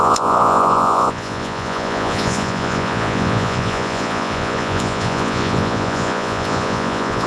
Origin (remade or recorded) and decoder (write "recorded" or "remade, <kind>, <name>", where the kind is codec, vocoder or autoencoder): remade, vocoder, Vocos